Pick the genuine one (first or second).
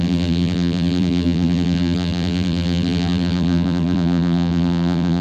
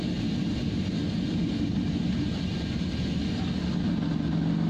second